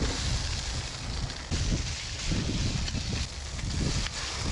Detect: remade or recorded recorded